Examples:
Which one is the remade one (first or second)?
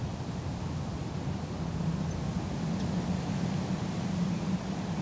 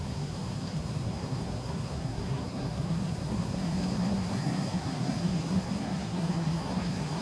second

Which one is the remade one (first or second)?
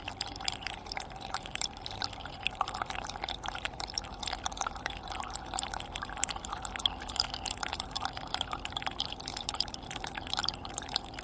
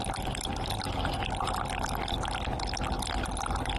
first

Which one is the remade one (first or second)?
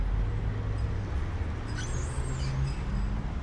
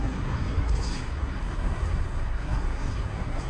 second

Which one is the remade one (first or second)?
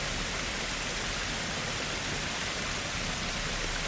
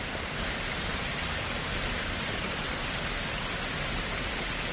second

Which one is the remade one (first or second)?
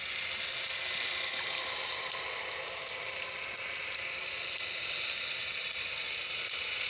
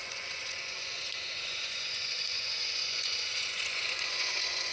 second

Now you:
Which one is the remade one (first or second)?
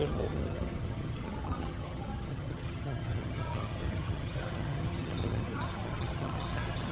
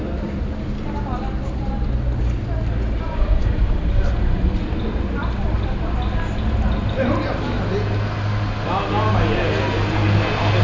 first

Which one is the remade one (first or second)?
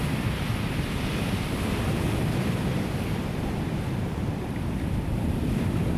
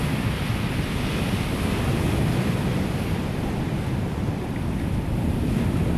first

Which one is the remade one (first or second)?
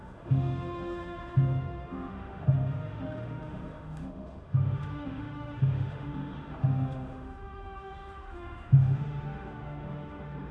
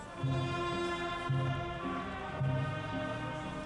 first